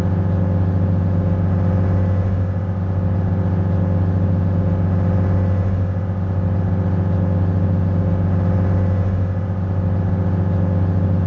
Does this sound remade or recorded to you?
recorded